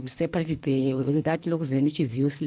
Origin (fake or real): fake